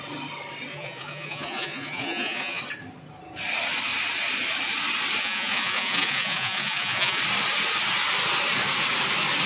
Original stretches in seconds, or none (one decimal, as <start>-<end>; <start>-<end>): 0.0-0.7; 2.6-5.2; 7.2-9.5

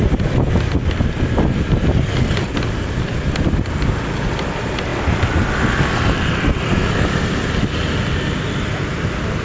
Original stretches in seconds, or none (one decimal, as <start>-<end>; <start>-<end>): 0.0-9.4